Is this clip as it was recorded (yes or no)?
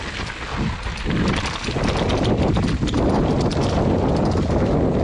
yes